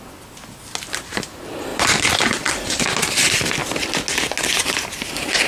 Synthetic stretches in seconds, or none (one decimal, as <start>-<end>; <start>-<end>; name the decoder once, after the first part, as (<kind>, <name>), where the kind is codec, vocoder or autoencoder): 1.7-2.5 (vocoder, BigVGAN v2)